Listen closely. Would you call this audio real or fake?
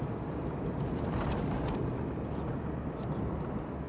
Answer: real